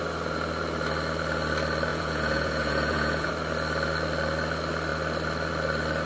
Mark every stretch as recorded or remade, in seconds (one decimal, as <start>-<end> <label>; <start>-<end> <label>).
0.0-1.9 recorded; 1.9-3.3 remade; 3.3-6.1 recorded